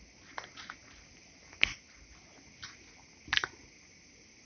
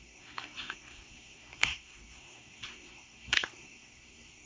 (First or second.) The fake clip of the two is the second